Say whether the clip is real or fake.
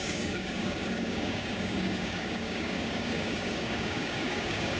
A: fake